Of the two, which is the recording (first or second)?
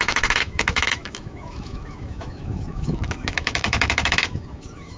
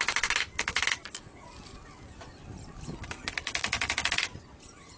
second